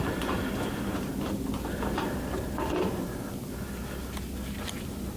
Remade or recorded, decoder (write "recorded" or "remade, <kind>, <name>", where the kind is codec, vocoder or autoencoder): recorded